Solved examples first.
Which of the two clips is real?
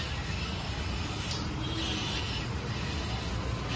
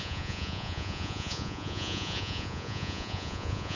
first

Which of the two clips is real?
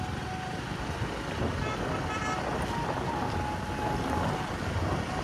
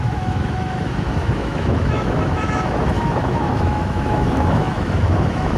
first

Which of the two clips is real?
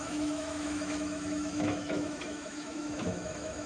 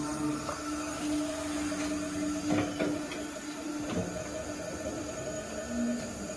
second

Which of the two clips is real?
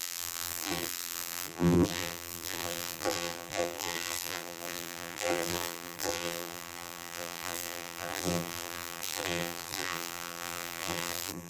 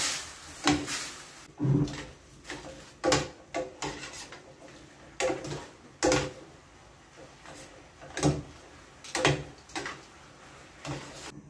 second